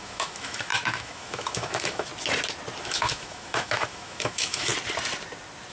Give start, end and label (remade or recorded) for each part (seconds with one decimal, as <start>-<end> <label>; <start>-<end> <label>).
0.0-2.1 remade; 2.1-2.8 recorded; 2.8-4.7 remade; 4.7-5.7 recorded